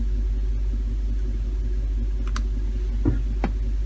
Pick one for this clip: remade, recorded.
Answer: recorded